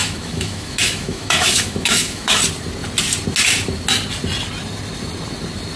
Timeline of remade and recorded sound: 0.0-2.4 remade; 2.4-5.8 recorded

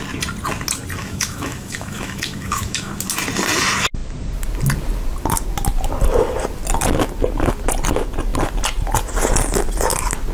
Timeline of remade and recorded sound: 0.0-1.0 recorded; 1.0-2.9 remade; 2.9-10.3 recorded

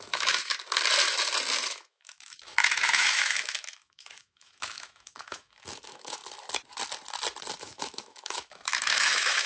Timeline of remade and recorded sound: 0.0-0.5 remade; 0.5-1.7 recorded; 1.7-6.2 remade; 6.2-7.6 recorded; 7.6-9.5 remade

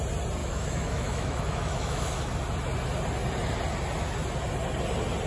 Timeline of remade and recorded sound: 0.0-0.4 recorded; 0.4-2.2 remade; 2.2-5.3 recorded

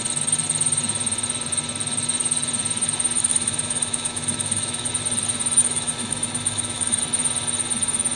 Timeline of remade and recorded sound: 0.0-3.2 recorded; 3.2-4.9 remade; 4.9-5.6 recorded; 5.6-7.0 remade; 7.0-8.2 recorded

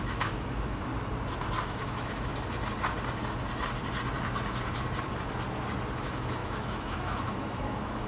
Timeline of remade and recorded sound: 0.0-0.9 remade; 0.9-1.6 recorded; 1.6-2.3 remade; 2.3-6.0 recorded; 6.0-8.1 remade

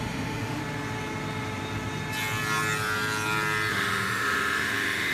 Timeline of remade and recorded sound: 0.0-0.6 remade; 0.6-3.7 recorded; 3.7-5.1 remade

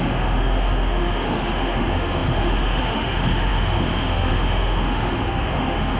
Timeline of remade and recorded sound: 0.0-6.0 remade